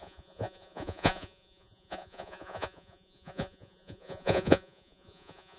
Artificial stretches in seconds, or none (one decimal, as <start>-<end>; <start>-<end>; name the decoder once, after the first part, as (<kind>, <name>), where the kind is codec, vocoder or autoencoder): 0.0-5.6 (vocoder, Vocos)